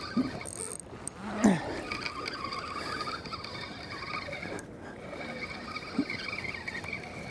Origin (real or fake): real